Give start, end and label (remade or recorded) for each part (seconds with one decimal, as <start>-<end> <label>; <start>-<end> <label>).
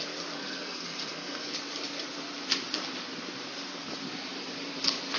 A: 0.0-0.4 recorded; 0.4-1.5 remade; 1.5-5.2 recorded